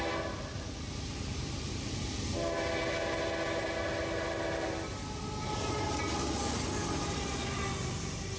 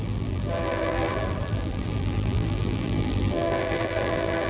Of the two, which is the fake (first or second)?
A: second